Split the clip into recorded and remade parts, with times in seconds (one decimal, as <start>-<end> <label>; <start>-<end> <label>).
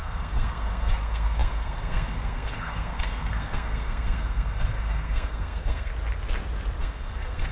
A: 0.0-5.9 remade; 5.9-6.8 recorded; 6.8-7.5 remade